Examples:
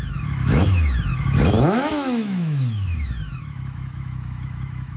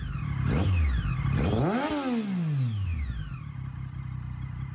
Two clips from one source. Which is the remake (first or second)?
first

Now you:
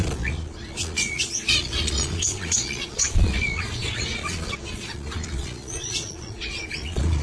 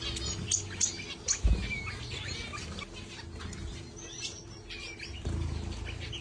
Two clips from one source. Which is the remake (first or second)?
first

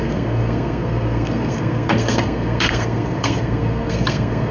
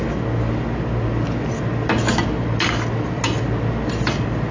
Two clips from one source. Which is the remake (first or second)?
first